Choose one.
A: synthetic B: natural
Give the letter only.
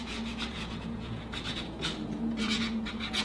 A